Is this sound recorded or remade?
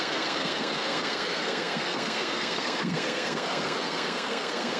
remade